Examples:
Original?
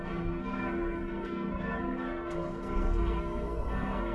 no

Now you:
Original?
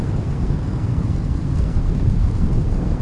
no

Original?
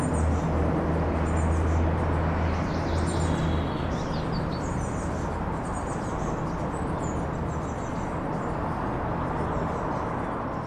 yes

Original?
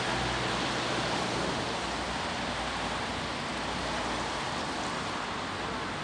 yes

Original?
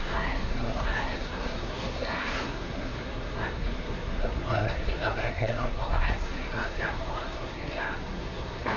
no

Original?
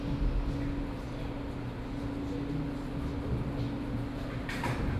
yes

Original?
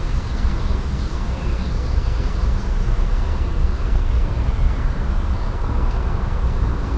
no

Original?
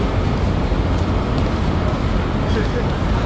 yes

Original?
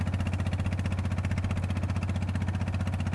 yes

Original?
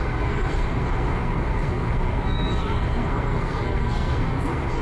no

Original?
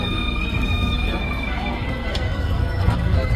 no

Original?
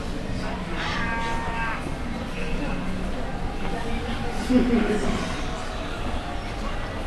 yes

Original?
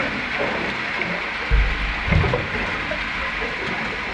yes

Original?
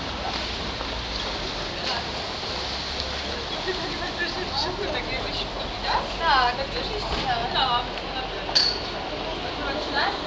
yes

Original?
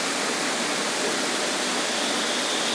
yes